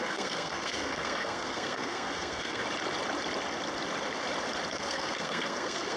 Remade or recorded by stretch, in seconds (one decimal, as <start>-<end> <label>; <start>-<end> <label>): 0.0-2.6 remade; 2.6-4.7 recorded; 4.7-6.0 remade